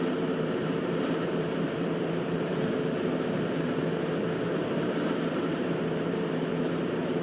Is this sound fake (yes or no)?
yes